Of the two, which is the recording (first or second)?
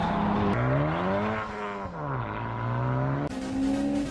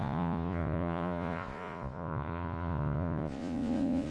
first